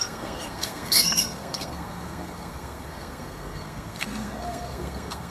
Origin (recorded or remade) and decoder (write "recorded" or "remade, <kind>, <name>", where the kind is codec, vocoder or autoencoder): remade, codec, SNAC